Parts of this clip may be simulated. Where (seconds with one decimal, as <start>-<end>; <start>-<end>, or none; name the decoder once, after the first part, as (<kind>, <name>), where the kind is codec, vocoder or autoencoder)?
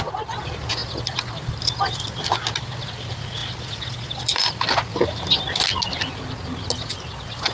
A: none